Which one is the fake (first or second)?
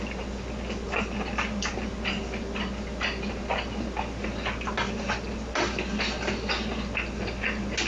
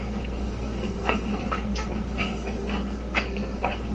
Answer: second